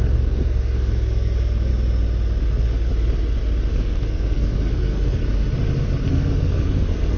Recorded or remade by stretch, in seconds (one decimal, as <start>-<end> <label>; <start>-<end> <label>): 0.0-1.7 remade; 1.7-2.5 recorded; 2.5-2.9 remade; 2.9-3.7 recorded; 3.7-5.2 remade; 5.2-6.1 recorded; 6.1-7.2 remade